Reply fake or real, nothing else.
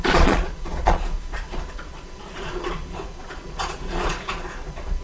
fake